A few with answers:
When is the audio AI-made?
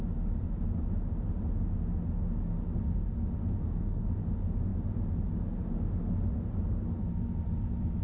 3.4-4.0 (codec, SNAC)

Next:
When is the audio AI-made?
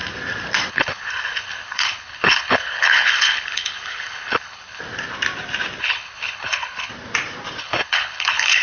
0.7-4.8 (codec, HILCodec); 5.8-6.9; 7.6-8.6